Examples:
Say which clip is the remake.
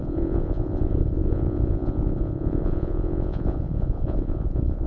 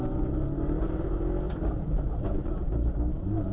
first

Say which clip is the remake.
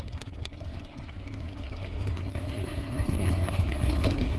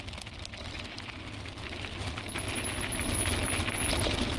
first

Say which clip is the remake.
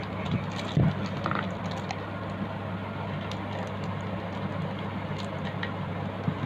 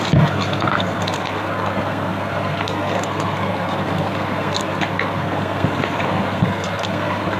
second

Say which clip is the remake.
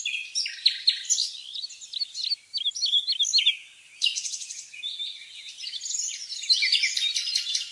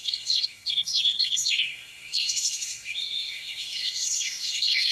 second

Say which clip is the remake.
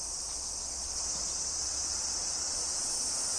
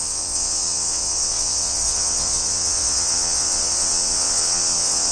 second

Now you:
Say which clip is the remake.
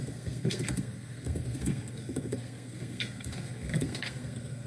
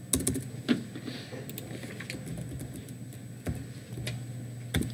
first